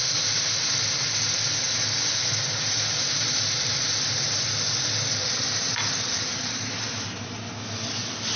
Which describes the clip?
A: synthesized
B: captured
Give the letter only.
B